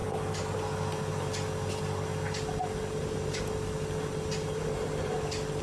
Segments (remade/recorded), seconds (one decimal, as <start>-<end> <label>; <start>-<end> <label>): 0.0-5.6 recorded